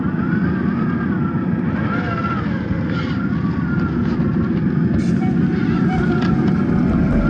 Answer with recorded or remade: recorded